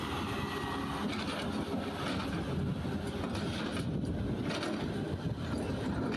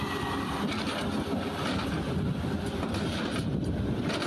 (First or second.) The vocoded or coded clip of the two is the second